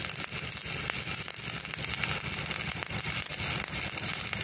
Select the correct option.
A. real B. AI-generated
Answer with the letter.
A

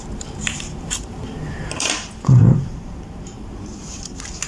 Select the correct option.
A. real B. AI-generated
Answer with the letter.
B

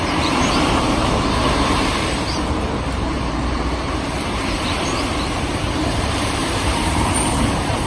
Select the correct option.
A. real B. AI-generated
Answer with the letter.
B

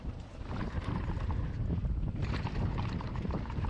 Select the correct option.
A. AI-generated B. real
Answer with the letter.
A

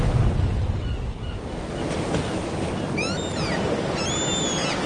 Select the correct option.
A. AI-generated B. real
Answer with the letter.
B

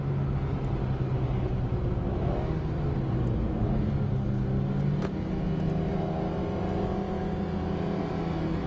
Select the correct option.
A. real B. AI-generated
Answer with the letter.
A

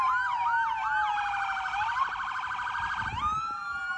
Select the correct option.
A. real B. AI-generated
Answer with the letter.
A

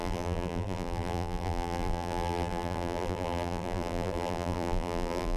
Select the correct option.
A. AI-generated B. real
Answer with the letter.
A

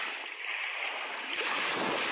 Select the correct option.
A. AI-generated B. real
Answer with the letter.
B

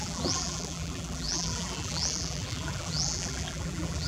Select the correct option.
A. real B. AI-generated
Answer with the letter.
B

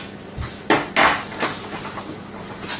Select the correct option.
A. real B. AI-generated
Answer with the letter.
A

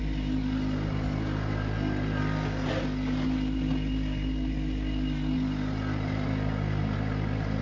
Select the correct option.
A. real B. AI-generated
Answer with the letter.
A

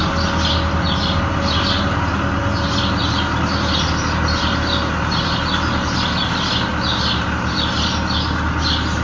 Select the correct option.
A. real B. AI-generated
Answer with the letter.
A